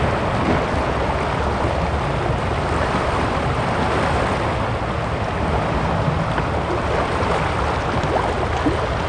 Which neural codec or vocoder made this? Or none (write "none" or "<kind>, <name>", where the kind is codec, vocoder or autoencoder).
none